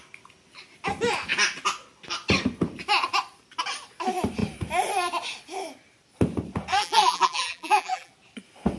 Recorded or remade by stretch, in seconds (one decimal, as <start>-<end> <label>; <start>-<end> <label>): 0.0-6.7 recorded; 6.7-8.1 remade; 8.1-8.8 recorded